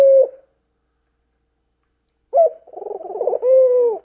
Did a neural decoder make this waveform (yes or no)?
no